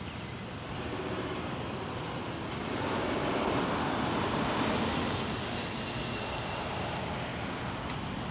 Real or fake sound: real